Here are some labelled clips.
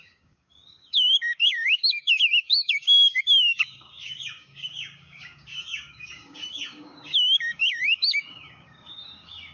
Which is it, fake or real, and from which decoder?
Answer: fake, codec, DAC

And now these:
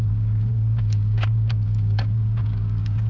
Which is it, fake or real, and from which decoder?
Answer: fake, codec, DAC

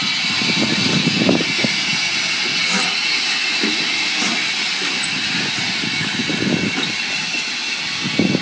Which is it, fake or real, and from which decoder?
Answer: real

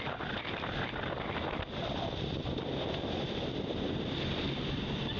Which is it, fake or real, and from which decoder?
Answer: real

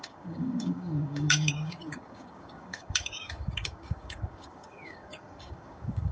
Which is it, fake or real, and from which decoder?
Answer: fake, codec, DAC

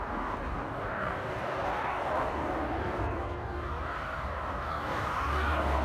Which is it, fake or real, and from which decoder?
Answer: fake, codec, DAC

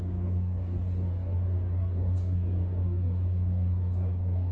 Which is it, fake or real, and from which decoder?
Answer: fake, codec, DAC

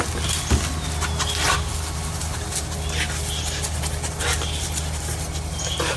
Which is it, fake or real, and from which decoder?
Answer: real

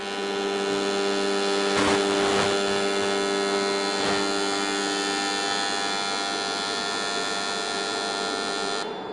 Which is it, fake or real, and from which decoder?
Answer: real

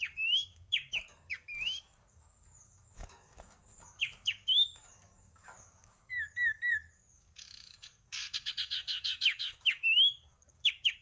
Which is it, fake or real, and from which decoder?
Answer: fake, codec, DAC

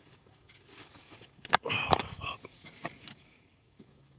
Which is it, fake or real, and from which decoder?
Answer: fake, codec, DAC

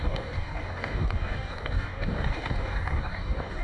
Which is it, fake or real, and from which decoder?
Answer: fake, codec, DAC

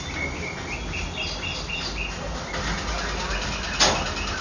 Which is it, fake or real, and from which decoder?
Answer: real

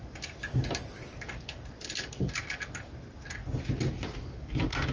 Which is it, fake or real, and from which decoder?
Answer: real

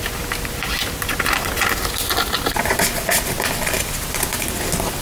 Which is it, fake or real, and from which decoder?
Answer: real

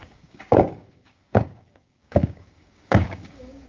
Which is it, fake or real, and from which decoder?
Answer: fake, codec, DAC